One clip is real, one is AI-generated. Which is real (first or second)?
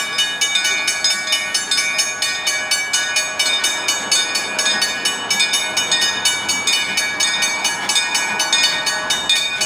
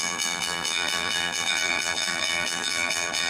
first